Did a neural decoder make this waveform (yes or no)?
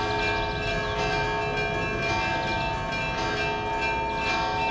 no